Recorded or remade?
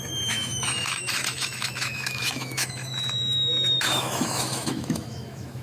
remade